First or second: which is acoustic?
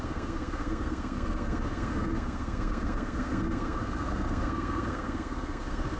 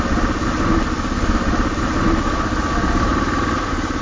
second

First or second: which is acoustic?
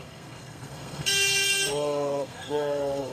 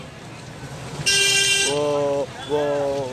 second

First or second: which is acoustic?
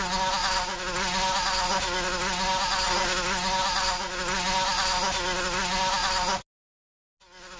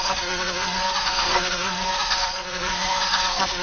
first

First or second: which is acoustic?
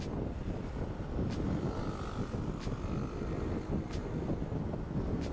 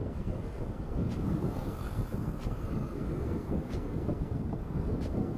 first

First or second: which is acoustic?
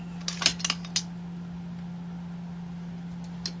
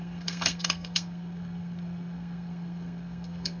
first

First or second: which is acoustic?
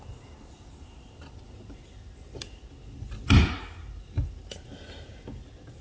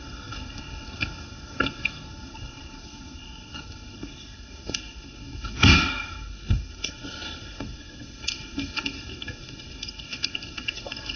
first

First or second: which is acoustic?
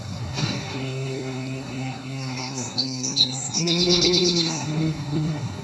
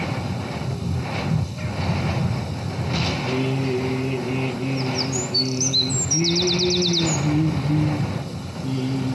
second